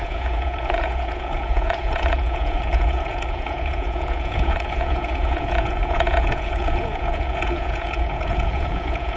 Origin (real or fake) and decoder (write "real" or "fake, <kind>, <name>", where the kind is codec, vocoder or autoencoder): fake, vocoder, Vocos